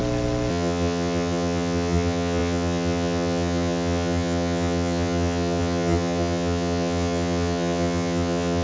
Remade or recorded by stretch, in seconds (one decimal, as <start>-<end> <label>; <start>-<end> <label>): 0.0-0.5 recorded; 0.5-8.6 remade